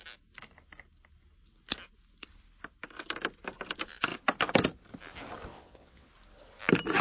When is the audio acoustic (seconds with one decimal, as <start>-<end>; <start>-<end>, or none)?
0.0-5.5; 6.1-7.0